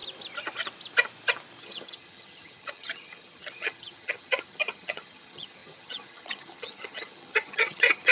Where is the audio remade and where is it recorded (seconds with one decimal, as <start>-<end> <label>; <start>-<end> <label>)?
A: 0.0-1.6 recorded; 1.6-8.1 remade